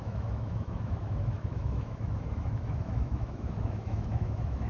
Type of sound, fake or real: fake